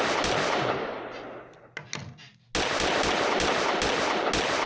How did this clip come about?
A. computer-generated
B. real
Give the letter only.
B